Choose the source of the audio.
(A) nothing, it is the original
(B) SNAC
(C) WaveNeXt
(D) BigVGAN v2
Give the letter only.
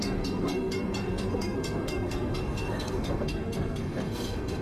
B